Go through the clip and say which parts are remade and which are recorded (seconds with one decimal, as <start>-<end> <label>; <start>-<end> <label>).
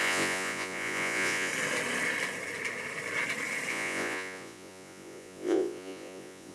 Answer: 0.0-1.5 remade; 1.5-3.7 recorded; 3.7-6.5 remade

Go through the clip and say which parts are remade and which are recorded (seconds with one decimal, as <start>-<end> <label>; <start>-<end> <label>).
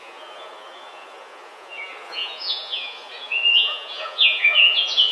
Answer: 0.0-5.1 remade